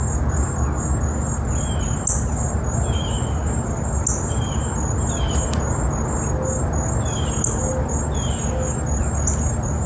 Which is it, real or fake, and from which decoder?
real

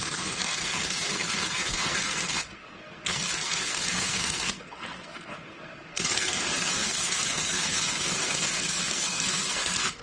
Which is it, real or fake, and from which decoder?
fake, codec, SNAC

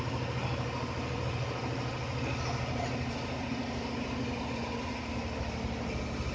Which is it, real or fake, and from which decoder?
real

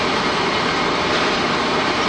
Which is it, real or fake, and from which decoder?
fake, vocoder, BigVGAN v2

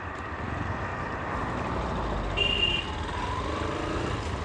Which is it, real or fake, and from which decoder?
real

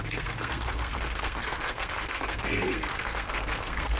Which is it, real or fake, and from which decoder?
fake, codec, SNAC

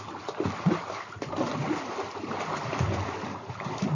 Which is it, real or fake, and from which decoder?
real